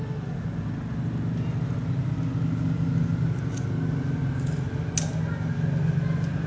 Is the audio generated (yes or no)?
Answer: no